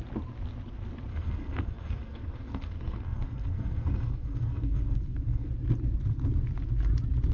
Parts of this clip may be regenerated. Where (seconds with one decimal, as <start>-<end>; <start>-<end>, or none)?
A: 1.1-5.5